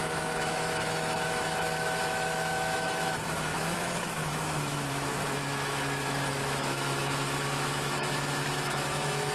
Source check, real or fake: fake